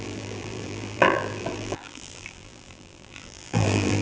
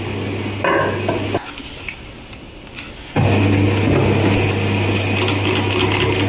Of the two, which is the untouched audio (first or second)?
second